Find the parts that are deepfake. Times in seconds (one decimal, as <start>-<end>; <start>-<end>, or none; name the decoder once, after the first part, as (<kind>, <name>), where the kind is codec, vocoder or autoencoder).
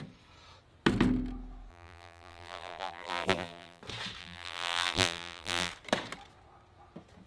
1.7-3.8 (vocoder, BigVGAN v2); 4.2-5.7